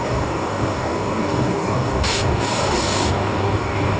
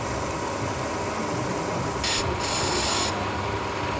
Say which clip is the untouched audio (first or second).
second